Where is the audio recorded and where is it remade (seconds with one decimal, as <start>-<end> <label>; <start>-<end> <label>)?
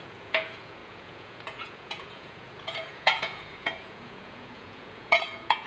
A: 0.0-5.7 remade